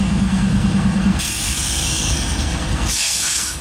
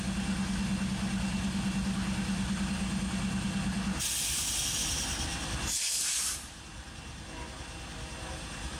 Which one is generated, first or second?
first